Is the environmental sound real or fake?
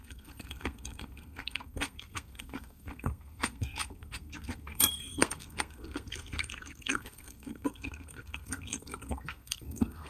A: fake